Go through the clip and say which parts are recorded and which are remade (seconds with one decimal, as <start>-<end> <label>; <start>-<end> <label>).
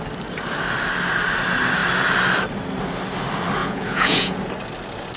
0.0-3.6 recorded; 3.6-4.4 remade; 4.4-5.2 recorded